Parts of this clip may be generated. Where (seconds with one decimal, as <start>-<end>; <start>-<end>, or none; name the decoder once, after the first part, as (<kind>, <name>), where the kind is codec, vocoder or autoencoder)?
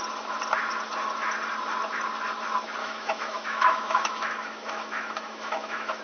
2.8-6.0 (autoencoder, DAC-VAE)